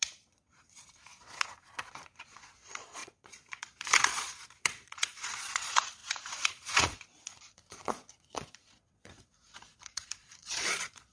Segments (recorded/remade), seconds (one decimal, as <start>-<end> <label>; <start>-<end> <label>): 0.0-11.1 remade